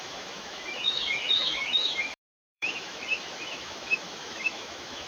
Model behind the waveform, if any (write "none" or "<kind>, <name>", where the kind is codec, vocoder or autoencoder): autoencoder, DAC-VAE